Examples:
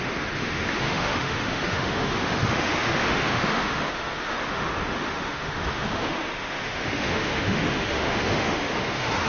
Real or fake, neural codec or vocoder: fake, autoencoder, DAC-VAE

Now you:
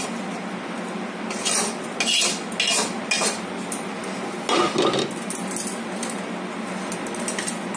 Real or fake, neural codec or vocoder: real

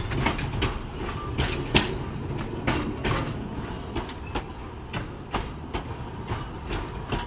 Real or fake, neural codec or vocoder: real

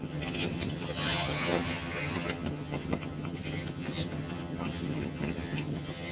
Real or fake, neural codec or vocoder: fake, vocoder, HiFi-GAN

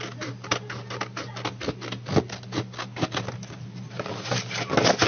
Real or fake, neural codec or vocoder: real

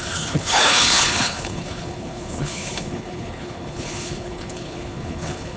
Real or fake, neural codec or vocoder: fake, codec, HILCodec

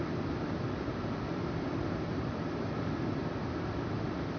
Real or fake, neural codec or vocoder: real